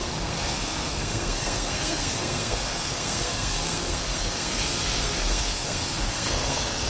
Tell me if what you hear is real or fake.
fake